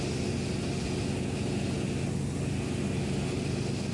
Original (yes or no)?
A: yes